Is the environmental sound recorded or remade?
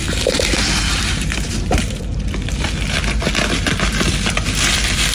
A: remade